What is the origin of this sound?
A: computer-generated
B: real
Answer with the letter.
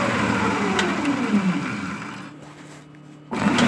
B